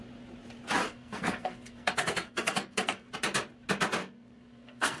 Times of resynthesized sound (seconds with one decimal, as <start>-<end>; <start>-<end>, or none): 0.8-3.1; 4.0-5.0